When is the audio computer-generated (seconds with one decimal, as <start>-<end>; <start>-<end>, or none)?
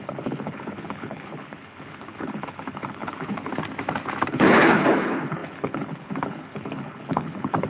0.0-3.5; 4.3-7.7